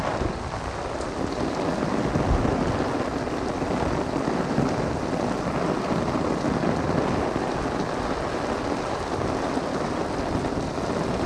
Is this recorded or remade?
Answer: recorded